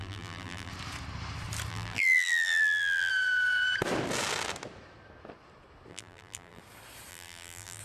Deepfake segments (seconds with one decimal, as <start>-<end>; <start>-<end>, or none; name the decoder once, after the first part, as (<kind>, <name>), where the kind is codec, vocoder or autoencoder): 0.0-0.7 (vocoder, BigVGAN v2); 1.7-3.1; 5.9-6.6; 7.1-7.8